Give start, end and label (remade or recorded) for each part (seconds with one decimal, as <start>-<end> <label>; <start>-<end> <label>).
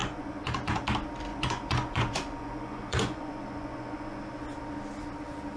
0.0-0.8 remade; 0.8-1.3 recorded; 1.3-4.2 remade; 4.2-5.6 recorded